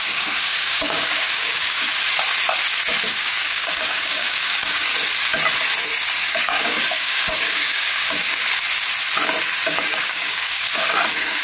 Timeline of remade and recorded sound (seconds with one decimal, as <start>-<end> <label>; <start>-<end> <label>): 0.0-1.9 remade; 1.9-3.1 recorded; 3.1-4.9 remade; 4.9-6.2 recorded; 6.2-8.4 remade; 8.4-9.8 recorded; 9.8-11.4 remade